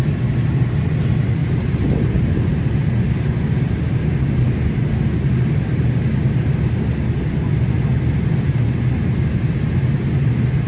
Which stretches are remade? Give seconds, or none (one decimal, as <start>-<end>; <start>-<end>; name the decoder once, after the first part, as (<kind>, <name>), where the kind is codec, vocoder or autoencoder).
1.4-2.7 (vocoder, BigVGAN v2)